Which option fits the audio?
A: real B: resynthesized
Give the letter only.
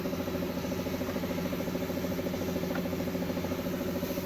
A